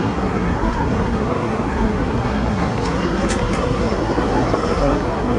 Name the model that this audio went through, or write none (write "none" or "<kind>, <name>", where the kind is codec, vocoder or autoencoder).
codec, SNAC